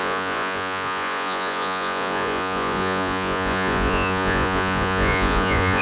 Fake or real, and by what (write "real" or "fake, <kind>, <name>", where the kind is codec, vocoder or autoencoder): fake, vocoder, Vocos